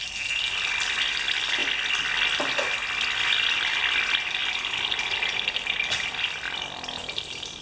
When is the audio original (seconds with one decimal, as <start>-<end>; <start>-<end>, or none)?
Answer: 0.0-7.6